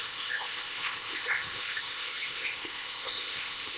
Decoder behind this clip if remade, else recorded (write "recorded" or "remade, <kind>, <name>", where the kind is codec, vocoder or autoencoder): remade, codec, ZipCodec